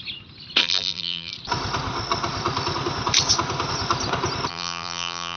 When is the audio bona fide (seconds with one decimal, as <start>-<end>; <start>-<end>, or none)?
0.0-0.6; 1.3-4.5